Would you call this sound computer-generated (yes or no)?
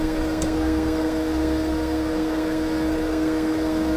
yes